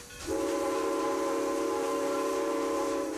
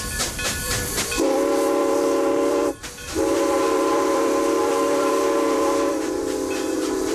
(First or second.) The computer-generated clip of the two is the second